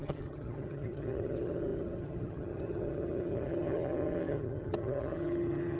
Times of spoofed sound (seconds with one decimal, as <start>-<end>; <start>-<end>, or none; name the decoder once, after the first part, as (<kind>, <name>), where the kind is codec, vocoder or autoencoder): 0.0-5.8 (vocoder, HiFi-GAN)